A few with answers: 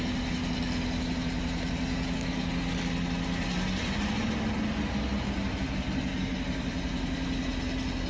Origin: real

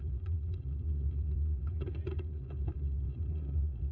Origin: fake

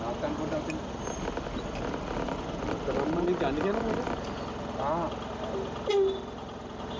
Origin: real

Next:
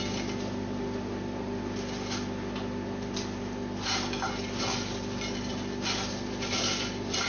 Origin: real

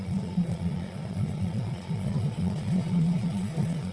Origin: fake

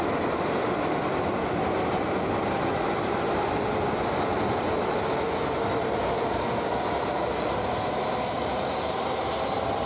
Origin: real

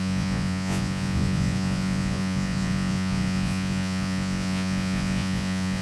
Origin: fake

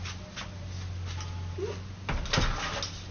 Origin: real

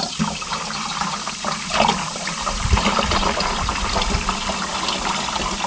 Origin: real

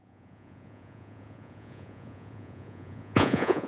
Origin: fake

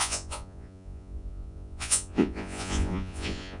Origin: fake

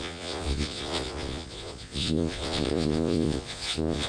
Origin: fake